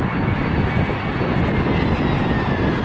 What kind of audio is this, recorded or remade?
recorded